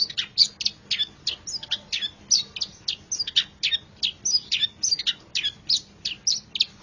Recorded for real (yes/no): yes